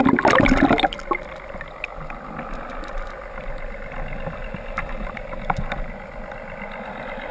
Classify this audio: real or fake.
real